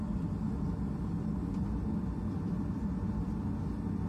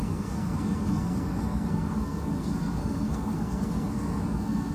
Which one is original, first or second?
first